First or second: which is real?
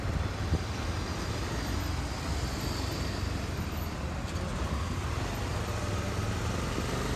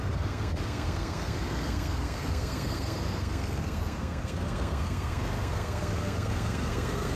first